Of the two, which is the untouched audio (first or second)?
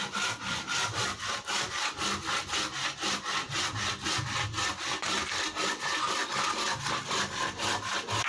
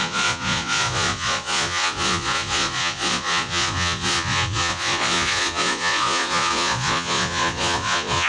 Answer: first